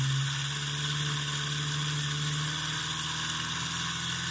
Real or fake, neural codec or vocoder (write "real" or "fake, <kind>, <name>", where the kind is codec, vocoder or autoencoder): real